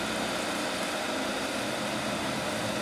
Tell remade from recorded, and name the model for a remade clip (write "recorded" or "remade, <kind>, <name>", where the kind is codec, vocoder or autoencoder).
recorded